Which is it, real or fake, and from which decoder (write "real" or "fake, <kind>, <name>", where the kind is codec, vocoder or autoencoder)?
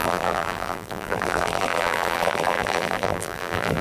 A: fake, vocoder, BigVGAN v2